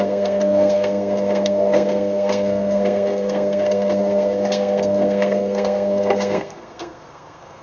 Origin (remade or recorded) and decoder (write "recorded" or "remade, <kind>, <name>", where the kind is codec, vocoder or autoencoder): remade, codec, SNAC